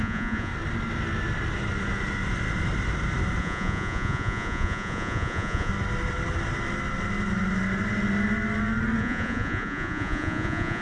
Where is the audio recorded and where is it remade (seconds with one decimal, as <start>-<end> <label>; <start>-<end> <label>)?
0.0-0.5 remade; 0.5-3.4 recorded; 3.4-5.7 remade; 5.7-9.0 recorded; 9.0-10.8 remade